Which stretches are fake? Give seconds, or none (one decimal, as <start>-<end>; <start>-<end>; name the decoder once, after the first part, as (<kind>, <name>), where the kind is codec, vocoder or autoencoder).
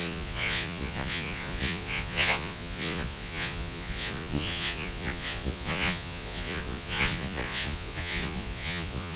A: 0.0-9.2 (vocoder, Vocos)